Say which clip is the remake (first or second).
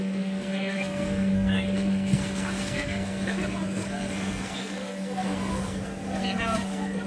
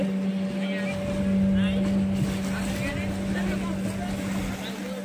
first